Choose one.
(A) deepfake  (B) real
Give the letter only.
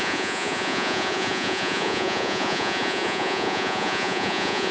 A